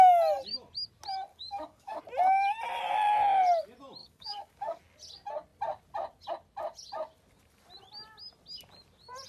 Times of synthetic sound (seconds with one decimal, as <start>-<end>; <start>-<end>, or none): 1.3-2.0; 4.0-4.8